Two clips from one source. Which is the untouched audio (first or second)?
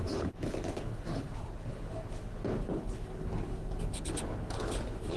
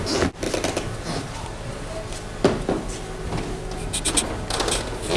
second